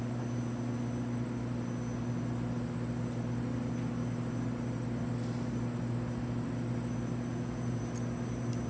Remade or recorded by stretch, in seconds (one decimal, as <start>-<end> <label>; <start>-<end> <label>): 0.0-7.3 recorded; 7.3-7.8 remade; 7.8-8.7 recorded